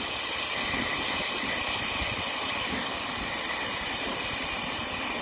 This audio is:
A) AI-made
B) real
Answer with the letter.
B